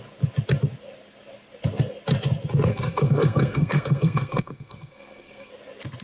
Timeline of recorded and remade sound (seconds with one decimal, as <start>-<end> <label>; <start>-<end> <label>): 0.0-2.7 recorded; 2.7-5.5 remade; 5.5-6.0 recorded